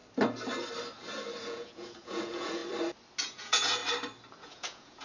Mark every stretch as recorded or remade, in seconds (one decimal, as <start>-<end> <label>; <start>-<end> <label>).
0.0-1.4 recorded; 1.4-2.6 remade; 2.6-3.2 recorded; 3.2-3.8 remade; 3.8-4.4 recorded; 4.4-5.0 remade